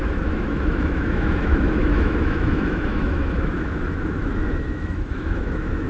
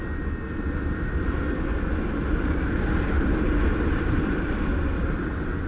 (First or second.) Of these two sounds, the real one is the second